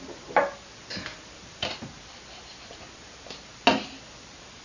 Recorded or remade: recorded